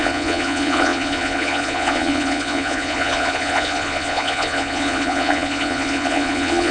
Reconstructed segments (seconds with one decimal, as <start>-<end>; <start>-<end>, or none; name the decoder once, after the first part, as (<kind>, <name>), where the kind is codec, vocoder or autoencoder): 0.0-6.7 (vocoder, Vocos)

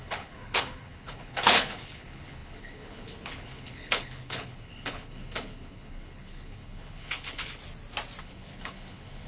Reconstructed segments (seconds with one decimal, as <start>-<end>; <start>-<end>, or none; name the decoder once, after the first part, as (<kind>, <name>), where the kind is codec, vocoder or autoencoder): 0.0-7.6 (codec, HILCodec); 8.2-9.3

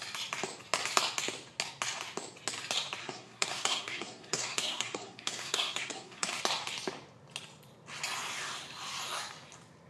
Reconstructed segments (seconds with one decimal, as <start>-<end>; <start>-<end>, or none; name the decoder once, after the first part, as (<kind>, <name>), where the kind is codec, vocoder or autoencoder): 3.0-6.4 (codec, SNAC)